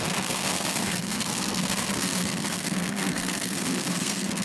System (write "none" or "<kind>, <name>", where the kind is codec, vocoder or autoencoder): codec, SNAC